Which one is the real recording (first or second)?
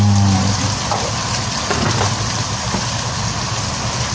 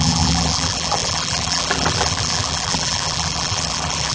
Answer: first